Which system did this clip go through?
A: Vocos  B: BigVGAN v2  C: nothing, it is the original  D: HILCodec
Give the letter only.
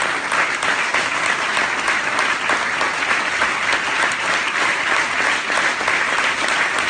C